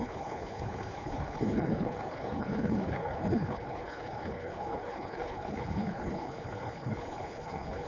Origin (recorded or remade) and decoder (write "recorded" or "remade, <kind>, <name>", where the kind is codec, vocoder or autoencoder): remade, codec, HILCodec